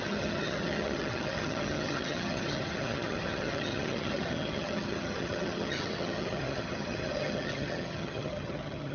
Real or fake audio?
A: fake